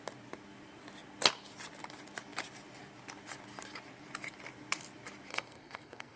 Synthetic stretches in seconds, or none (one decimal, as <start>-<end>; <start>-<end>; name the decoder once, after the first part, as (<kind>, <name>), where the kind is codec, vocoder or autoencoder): 5.3-6.2 (codec, SNAC)